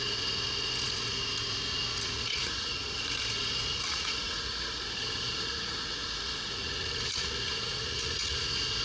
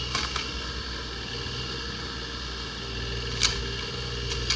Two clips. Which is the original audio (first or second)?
second